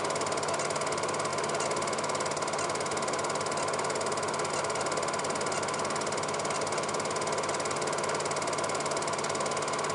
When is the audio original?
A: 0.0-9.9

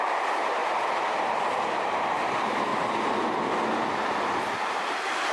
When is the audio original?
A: 2.7-4.4

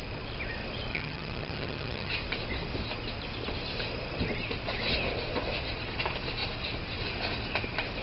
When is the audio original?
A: 0.0-0.9; 2.1-8.0

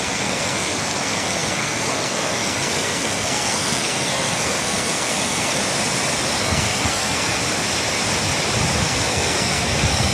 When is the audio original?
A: 5.6-6.4; 7.4-8.8

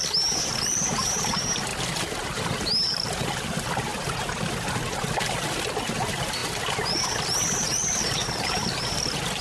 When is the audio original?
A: 0.0-9.4

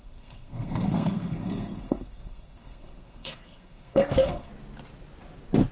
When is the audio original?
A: 4.5-5.7